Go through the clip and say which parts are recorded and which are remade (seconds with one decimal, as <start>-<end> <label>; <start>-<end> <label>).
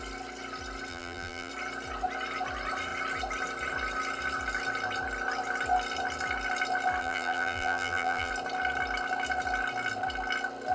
0.0-0.9 recorded; 0.9-1.5 remade; 1.5-7.0 recorded; 7.0-8.3 remade; 8.3-10.7 recorded